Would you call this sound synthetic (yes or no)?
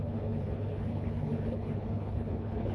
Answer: yes